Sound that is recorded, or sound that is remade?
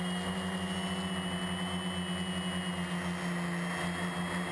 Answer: recorded